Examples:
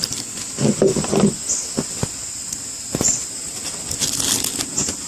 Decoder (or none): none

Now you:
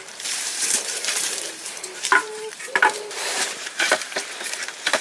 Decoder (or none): vocoder, BigVGAN v2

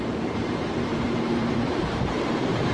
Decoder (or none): vocoder, BigVGAN v2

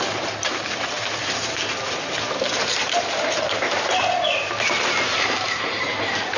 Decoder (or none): vocoder, BigVGAN v2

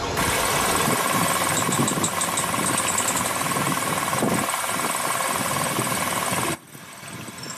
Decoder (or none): none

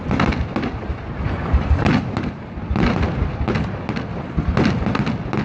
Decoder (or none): none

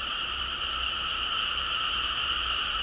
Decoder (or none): vocoder, BigVGAN v2